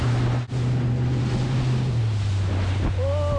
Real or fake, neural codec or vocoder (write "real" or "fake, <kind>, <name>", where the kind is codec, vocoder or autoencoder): real